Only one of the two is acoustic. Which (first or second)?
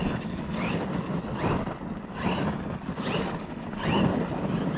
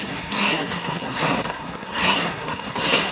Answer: first